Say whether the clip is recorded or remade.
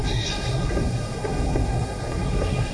remade